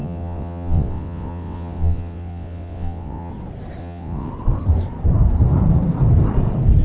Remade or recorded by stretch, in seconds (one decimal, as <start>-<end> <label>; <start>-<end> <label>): 0.0-3.3 remade; 3.3-3.8 recorded; 3.8-4.3 remade; 4.3-6.8 recorded